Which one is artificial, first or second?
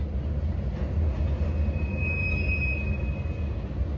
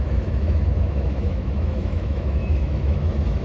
second